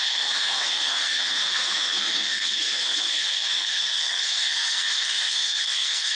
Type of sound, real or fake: fake